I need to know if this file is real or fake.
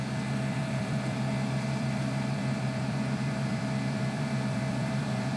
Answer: fake